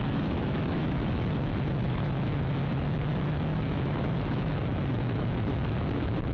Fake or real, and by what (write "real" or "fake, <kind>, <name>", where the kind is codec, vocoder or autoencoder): fake, autoencoder, DAC-VAE